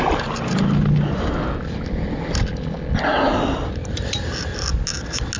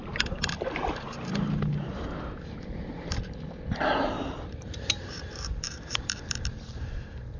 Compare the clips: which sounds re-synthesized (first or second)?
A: second